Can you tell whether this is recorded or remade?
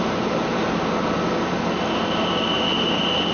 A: recorded